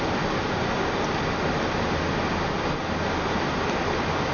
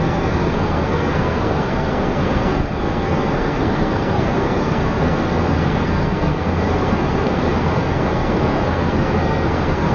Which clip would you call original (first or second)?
first